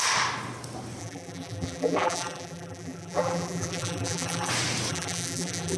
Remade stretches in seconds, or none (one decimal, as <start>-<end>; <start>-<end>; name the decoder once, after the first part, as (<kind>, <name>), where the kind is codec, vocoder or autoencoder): 1.0-4.5 (vocoder, BigVGAN v2); 4.9-5.8